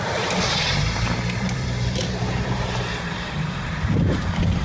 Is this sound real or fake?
fake